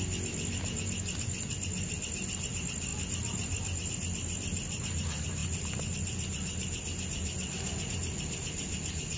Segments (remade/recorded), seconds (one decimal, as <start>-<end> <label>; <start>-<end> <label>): 0.0-9.2 recorded